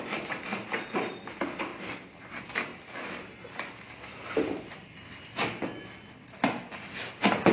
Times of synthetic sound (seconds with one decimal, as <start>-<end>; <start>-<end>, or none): none

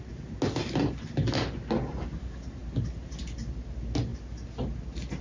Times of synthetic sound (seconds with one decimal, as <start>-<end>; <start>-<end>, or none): none

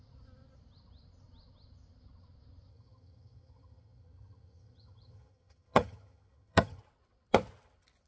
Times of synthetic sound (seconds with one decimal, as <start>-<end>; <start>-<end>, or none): 2.7-6.8

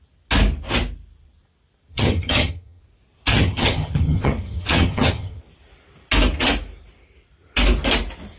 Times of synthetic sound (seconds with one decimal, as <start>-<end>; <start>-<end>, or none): 1.9-2.8; 3.3-5.4

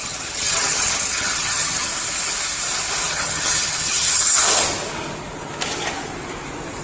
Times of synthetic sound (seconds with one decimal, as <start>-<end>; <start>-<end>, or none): 0.0-1.9; 3.1-4.4

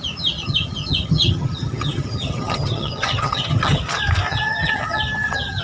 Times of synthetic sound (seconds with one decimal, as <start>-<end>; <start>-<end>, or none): 0.4-3.8; 4.3-5.6